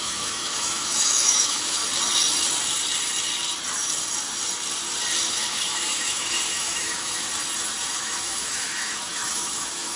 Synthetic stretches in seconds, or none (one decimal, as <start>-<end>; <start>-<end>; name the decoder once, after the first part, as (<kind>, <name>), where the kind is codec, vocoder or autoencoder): 0.0-1.8 (autoencoder, DAC-VAE); 5.3-7.3; 8.0-10.0